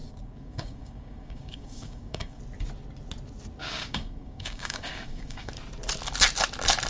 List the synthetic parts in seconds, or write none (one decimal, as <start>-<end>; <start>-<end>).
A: 0.0-2.4; 3.6-5.5